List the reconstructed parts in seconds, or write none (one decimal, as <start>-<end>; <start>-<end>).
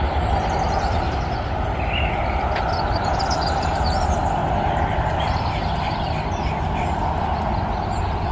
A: none